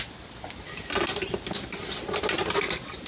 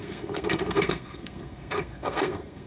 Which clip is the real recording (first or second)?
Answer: first